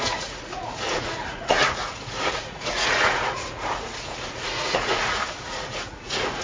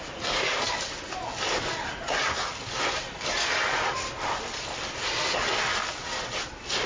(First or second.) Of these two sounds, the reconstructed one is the first